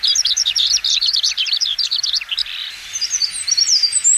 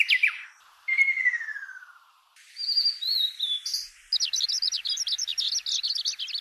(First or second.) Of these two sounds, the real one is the second